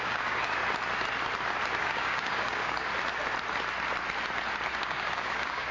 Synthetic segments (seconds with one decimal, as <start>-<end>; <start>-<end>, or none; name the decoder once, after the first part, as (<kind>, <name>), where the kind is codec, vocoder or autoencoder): 0.0-0.6 (codec, DAC); 1.8-2.9; 4.8-5.7